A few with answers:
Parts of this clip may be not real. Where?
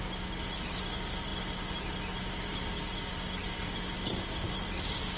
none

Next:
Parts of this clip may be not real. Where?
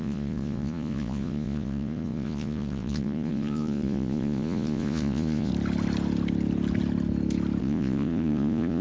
0.0-5.5 (vocoder, Vocos); 7.6-8.8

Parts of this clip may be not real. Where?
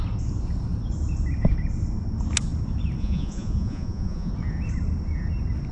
3.0-4.3 (vocoder, Vocos)